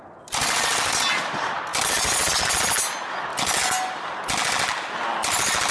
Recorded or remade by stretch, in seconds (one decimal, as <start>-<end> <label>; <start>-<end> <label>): 0.0-5.7 recorded